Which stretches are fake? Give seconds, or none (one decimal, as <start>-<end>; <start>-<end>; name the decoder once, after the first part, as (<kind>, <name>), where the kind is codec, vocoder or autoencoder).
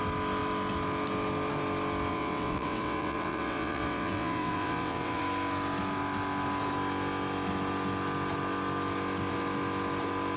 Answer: 2.1-5.2 (vocoder, WaveNeXt)